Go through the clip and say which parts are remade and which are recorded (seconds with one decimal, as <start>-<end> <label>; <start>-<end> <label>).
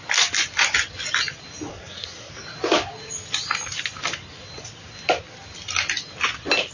0.0-1.7 recorded; 1.7-2.3 remade; 2.3-6.7 recorded